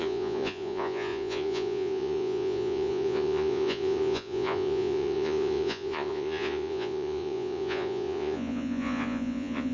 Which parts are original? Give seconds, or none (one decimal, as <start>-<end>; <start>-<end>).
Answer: none